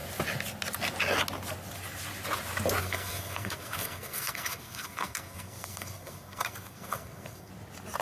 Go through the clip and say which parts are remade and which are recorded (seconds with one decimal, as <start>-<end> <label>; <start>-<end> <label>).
0.0-2.8 recorded; 2.8-7.5 remade; 7.5-8.0 recorded